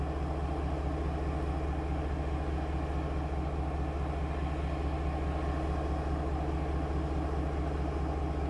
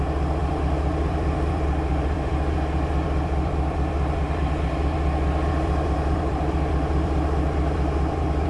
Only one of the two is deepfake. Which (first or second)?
second